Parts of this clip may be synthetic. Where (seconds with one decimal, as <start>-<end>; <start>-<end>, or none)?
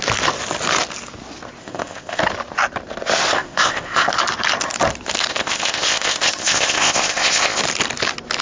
1.6-2.2; 3.3-4.1; 5.3-7.6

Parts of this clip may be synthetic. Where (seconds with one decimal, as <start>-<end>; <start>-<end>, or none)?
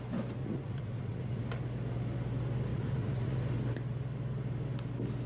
0.4-1.4; 2.7-3.4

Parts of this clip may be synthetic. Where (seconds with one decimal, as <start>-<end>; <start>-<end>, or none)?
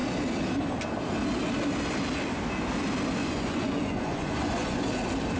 3.2-4.9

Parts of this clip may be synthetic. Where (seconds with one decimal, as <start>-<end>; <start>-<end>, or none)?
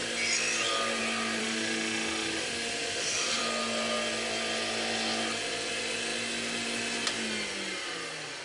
1.4-3.4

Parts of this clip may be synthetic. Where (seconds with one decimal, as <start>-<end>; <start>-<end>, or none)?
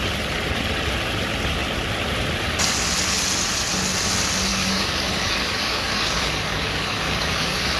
4.5-7.8